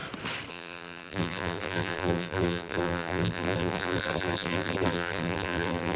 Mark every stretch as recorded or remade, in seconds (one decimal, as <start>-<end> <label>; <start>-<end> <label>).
0.0-0.5 recorded; 0.5-6.0 remade